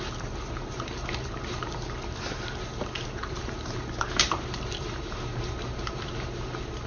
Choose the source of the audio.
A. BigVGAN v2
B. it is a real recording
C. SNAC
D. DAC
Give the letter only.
A